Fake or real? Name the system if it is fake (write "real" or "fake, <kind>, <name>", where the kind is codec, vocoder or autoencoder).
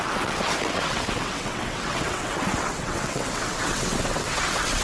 fake, vocoder, WaveNeXt